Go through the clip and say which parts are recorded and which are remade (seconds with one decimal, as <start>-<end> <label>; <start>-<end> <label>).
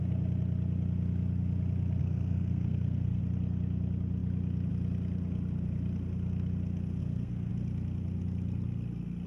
0.0-2.0 recorded; 2.0-3.2 remade; 3.2-7.0 recorded; 7.0-7.5 remade; 7.5-9.3 recorded